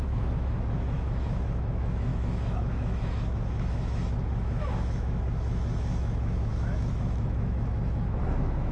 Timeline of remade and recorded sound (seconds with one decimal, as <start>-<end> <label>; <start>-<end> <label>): 0.0-8.7 remade